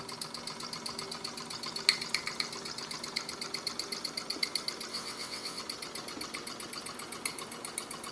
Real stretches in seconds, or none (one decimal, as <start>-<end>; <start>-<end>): 0.0-4.9; 5.6-8.1